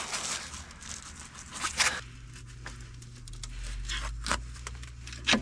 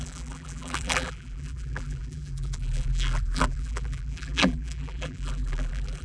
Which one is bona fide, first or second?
first